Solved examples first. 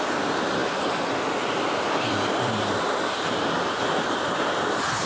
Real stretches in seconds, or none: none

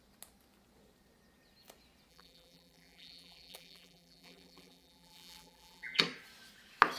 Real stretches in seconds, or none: 0.0-2.1; 6.0-7.0